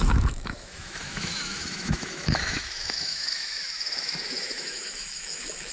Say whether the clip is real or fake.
fake